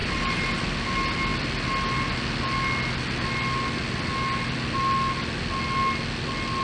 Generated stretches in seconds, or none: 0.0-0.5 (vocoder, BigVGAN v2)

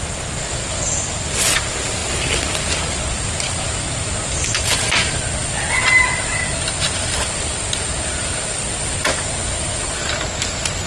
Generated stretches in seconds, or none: none

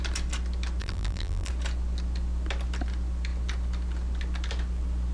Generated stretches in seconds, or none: 0.8-1.5 (vocoder, BigVGAN v2)

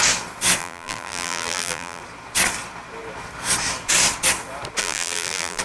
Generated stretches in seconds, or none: 0.6-2.0 (vocoder, BigVGAN v2); 4.8-5.6

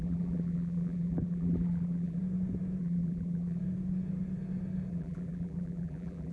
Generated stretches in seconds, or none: 0.0-2.2 (vocoder, BigVGAN v2); 2.8-3.6; 4.9-6.3

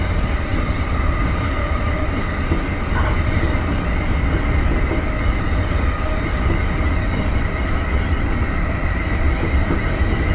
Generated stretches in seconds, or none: none